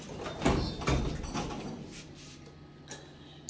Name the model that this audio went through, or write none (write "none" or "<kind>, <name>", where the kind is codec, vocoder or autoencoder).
none